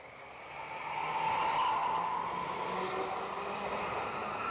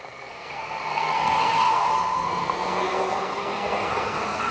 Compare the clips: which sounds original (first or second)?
first